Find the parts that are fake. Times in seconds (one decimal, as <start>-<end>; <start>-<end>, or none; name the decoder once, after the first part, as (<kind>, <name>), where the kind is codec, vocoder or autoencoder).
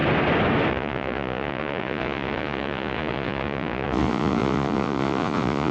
0.7-5.7 (vocoder, Vocos)